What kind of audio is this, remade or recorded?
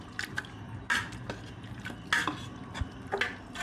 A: recorded